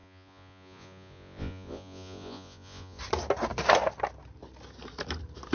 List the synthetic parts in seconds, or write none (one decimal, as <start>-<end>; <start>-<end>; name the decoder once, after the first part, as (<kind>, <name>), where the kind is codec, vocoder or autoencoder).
0.0-3.0 (vocoder, Vocos)